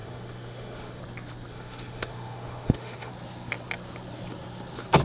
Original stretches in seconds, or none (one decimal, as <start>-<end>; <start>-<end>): 1.0-1.5; 3.1-5.0